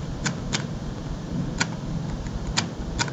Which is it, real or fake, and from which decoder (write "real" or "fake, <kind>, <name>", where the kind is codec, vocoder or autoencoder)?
real